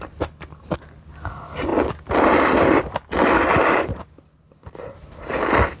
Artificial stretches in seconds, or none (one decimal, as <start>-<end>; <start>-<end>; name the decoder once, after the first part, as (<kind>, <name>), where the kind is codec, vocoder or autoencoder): none